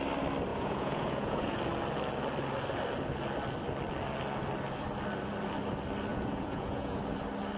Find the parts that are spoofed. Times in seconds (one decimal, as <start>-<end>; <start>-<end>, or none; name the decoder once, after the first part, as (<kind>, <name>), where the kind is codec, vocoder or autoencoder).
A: 0.5-1.6 (vocoder, Vocos); 6.1-7.0

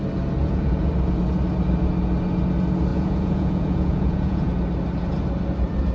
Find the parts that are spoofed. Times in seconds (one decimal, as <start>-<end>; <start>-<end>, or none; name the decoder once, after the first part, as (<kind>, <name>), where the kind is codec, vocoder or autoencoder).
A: 0.4-0.9 (vocoder, Vocos); 2.9-4.5

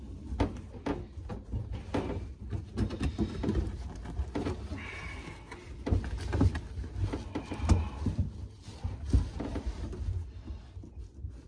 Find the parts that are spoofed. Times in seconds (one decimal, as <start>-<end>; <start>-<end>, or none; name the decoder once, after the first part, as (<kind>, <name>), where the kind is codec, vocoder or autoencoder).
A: none

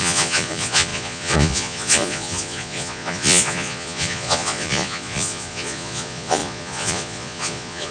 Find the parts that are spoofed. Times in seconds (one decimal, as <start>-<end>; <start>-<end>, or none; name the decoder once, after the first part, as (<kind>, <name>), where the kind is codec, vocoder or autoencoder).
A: 0.0-7.9 (vocoder, Vocos)

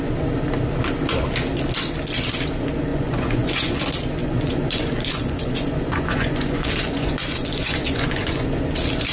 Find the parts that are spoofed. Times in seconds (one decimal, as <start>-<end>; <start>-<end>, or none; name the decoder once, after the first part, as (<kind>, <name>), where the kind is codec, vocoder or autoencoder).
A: 2.9-3.8 (vocoder, Vocos); 4.2-8.6

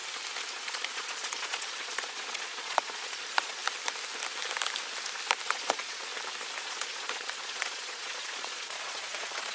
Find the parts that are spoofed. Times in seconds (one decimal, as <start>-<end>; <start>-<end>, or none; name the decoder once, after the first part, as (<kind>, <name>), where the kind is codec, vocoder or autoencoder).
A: 0.5-3.6 (vocoder, Vocos); 5.5-6.1; 6.6-9.5

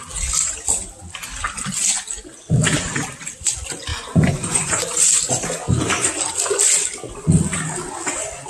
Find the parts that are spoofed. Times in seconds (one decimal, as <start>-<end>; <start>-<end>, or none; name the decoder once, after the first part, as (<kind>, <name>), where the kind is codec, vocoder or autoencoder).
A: 3.9-4.8 (vocoder, Vocos)